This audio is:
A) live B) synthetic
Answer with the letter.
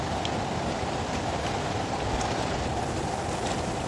B